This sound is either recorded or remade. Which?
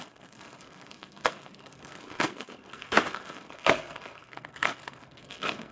remade